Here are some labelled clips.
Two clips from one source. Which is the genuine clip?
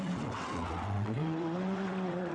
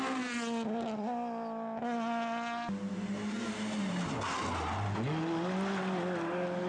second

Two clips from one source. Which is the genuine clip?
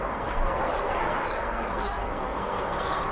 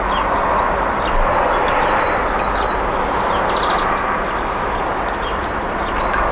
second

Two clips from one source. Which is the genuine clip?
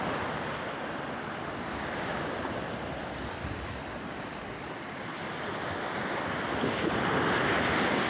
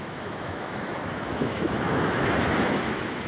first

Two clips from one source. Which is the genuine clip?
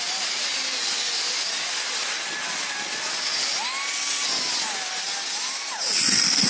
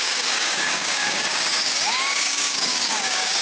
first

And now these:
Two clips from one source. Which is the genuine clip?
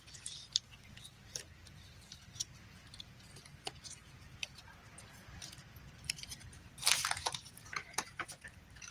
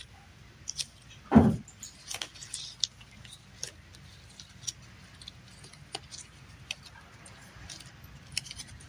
second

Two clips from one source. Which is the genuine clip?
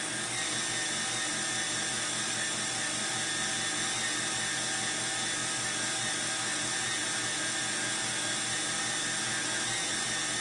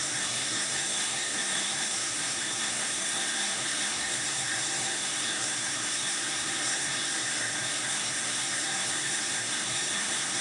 first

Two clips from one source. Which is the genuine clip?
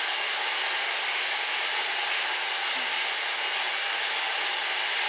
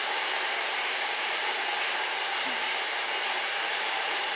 first